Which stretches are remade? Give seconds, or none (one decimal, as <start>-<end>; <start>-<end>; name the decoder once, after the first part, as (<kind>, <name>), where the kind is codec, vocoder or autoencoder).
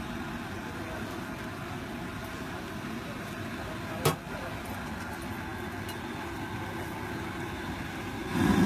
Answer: none